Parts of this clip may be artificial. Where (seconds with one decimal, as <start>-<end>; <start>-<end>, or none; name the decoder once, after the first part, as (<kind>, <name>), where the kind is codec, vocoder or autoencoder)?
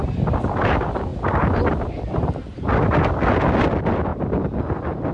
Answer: none